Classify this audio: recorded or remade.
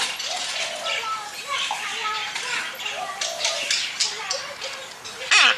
recorded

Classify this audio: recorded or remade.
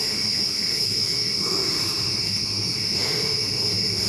remade